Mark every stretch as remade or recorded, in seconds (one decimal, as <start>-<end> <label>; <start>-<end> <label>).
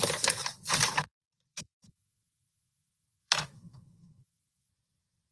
0.0-1.5 recorded; 1.5-4.7 remade; 4.7-5.3 recorded